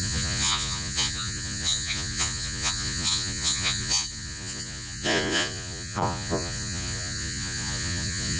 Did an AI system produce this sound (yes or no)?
yes